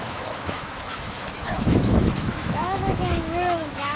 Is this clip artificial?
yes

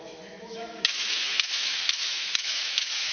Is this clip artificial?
yes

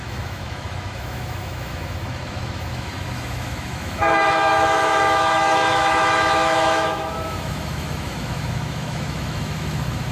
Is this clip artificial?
yes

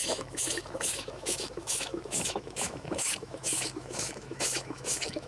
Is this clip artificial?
yes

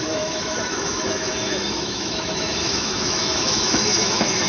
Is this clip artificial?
yes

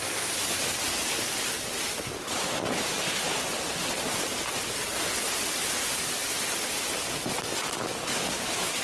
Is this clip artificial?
no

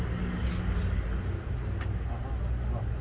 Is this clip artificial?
no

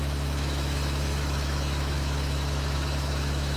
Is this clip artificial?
yes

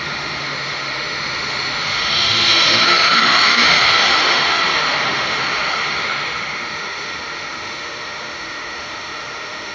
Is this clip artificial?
yes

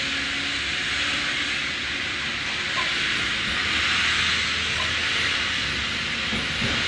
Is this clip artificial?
no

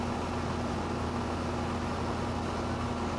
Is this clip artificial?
no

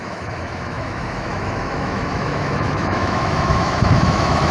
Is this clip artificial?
yes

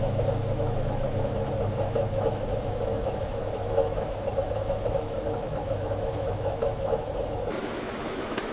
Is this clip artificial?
yes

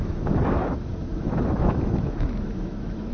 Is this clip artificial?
yes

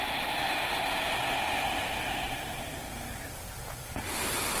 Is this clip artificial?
no